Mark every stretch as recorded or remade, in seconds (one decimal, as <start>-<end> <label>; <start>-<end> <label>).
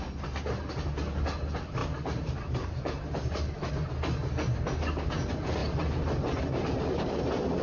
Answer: 0.0-1.8 recorded; 1.8-3.7 remade; 3.7-5.6 recorded; 5.6-7.6 remade